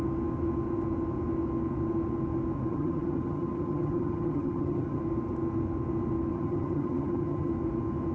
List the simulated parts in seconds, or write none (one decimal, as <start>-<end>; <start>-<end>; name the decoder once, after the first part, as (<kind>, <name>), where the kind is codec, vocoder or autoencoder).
2.7-5.0 (vocoder, HiFi-GAN); 6.3-7.5